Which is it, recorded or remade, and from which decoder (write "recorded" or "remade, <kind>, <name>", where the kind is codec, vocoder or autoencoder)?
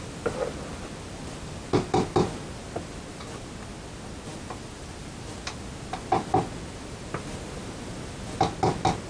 recorded